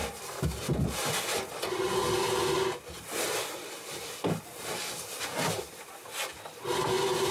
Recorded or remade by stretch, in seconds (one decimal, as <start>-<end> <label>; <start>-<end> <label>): 0.0-7.3 recorded